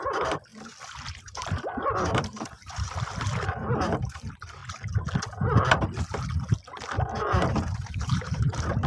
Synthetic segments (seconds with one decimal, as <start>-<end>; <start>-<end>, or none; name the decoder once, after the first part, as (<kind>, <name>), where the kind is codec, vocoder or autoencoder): 0.0-0.5 (vocoder, BigVGAN v2); 1.2-4.6; 7.5-8.9